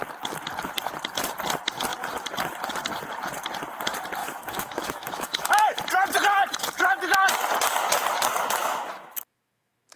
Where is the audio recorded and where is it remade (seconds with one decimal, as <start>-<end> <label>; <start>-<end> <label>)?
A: 0.0-4.2 recorded; 4.2-5.8 remade; 5.8-8.6 recorded; 8.6-10.0 remade